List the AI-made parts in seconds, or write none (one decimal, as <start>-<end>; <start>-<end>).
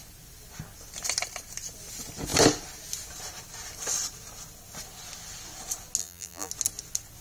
6.0-6.5